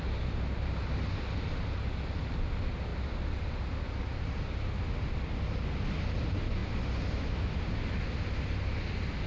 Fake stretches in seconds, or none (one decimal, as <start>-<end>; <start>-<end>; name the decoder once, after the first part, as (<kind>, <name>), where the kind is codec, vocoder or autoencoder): none

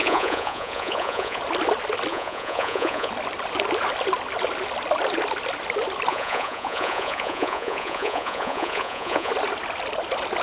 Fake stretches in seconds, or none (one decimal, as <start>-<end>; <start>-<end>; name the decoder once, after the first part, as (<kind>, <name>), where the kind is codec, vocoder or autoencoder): 0.0-1.4 (vocoder, Vocos); 2.1-3.1; 6.1-9.3

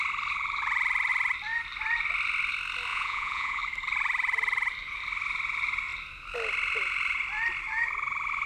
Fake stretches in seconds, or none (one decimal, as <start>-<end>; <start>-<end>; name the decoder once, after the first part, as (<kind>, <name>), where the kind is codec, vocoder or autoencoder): 2.9-3.6 (vocoder, Vocos)

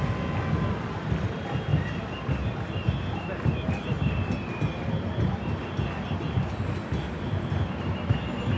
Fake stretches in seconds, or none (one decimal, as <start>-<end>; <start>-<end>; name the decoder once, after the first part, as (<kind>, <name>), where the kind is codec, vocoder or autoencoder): none

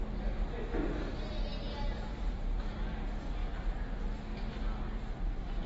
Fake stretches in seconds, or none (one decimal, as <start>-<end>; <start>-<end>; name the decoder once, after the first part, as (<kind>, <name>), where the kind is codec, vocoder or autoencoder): none